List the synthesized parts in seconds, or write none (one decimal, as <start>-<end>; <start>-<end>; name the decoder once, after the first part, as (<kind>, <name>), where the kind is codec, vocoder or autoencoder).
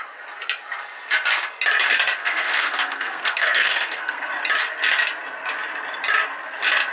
2.2-4.3 (codec, SNAC)